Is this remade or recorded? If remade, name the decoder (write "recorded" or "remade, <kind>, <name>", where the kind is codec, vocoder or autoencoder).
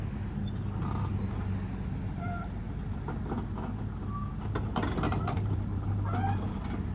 recorded